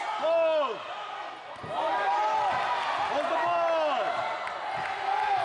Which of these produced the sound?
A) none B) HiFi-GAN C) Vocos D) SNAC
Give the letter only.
A